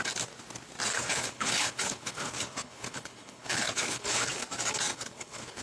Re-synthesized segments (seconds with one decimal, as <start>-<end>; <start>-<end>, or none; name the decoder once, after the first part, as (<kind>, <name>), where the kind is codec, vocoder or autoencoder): 0.9-4.3 (codec, HILCodec); 4.9-5.6